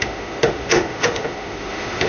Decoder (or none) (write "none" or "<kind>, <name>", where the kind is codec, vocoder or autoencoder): autoencoder, DAC-VAE